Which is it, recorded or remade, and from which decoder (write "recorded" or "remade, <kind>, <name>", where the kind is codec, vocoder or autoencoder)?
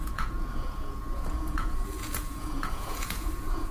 remade, vocoder, Vocos